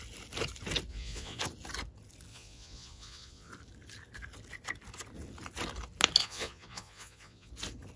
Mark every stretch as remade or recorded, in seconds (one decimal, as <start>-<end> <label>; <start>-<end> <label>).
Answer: 0.0-0.9 recorded; 0.9-1.4 remade; 1.4-2.3 recorded; 2.3-3.5 remade; 3.5-6.2 recorded; 6.2-7.5 remade; 7.5-8.0 recorded